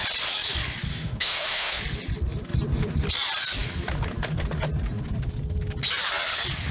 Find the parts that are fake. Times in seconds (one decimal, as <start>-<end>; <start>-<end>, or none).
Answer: 0.9-1.8